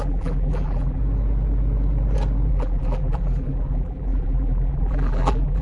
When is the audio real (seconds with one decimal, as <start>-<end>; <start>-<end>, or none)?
1.0-2.5